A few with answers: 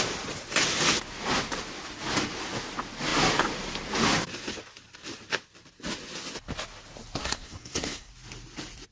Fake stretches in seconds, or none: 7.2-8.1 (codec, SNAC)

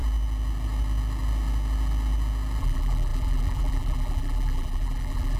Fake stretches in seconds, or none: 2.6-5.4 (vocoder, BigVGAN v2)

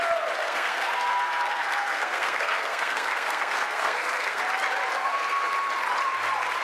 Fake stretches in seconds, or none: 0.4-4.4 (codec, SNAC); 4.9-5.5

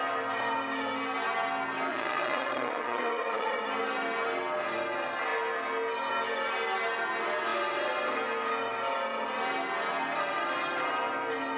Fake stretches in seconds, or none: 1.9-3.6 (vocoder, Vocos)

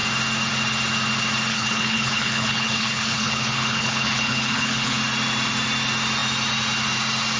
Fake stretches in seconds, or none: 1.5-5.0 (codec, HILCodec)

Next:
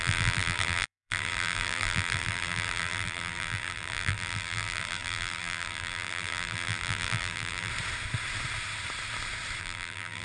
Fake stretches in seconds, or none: 0.0-7.7 (vocoder, BigVGAN v2); 9.6-10.2

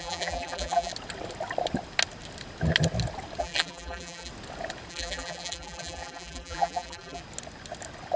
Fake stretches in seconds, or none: 0.0-0.9 (vocoder, BigVGAN v2); 3.4-4.3; 4.9-7.2